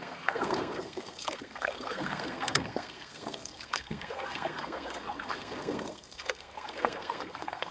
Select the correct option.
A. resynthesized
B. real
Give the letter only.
A